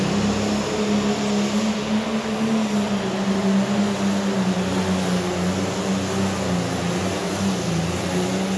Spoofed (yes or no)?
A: no